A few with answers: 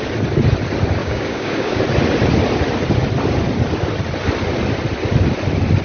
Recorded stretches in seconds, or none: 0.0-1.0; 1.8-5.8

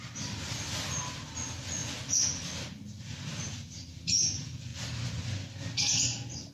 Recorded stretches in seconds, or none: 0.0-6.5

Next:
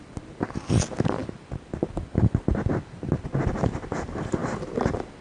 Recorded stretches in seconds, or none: 0.0-5.2

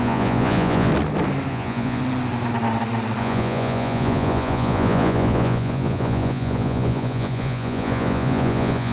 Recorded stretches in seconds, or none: 0.9-1.5; 2.0-3.2